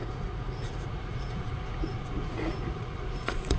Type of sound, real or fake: fake